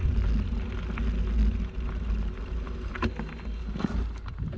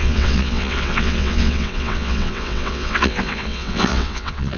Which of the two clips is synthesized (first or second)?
second